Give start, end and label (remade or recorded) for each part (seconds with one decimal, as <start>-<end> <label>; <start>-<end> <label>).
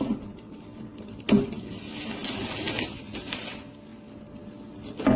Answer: 0.0-5.2 recorded